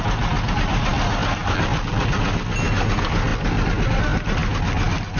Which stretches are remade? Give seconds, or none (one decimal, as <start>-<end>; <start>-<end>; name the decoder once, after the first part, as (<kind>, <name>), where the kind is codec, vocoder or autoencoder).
1.4-2.2 (vocoder, BigVGAN v2)